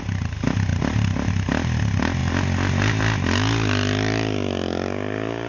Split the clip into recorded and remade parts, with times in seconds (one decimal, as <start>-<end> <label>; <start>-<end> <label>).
0.0-5.5 recorded